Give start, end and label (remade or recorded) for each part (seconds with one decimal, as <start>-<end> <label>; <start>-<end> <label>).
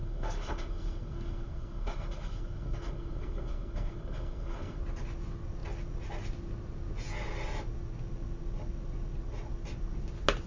0.0-4.8 remade; 4.8-10.5 recorded